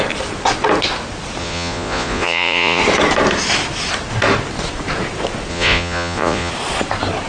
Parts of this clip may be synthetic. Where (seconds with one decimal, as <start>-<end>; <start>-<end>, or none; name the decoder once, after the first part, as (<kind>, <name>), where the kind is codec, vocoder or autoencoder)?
1.4-2.8 (vocoder, Vocos); 5.5-6.5